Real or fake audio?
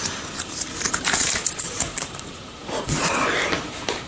fake